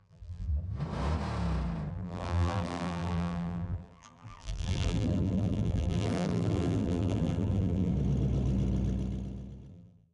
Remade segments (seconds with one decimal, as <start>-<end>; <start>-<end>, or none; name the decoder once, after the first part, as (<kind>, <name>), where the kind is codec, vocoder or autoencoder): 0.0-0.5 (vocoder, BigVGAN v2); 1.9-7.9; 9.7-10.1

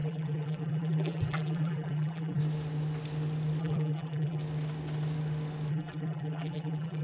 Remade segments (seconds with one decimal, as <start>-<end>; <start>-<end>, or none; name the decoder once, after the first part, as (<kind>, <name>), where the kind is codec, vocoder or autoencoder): 0.0-2.4 (vocoder, BigVGAN v2); 3.6-4.4; 5.7-7.0

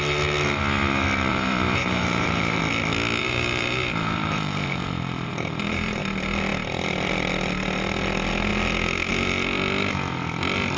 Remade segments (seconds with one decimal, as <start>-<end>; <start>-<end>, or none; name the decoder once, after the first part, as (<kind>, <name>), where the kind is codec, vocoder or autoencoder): 1.3-2.6 (vocoder, BigVGAN v2); 3.2-6.0

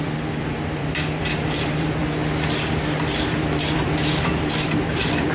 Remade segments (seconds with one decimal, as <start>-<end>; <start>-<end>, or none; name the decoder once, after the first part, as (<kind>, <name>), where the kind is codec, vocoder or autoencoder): 0.0-2.0 (vocoder, BigVGAN v2); 3.3-5.3